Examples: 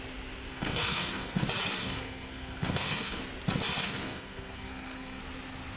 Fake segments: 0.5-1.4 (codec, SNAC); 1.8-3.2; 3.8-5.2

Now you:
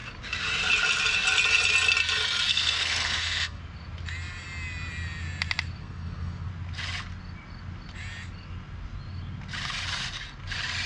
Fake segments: 2.5-3.6 (codec, SNAC); 5.8-6.5

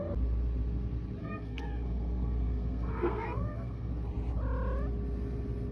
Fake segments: 1.2-3.9 (codec, SNAC)

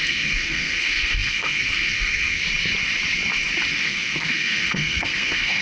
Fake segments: 0.0-2.4 (codec, SNAC); 3.7-5.6

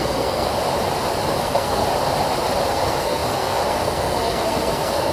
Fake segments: 0.0-0.5 (codec, SNAC); 1.3-1.8; 2.7-5.1

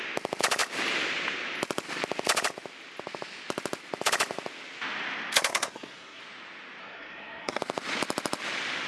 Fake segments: 5.5-6.2 (codec, SNAC); 6.8-7.6